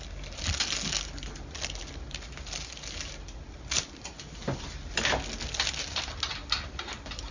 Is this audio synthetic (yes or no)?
no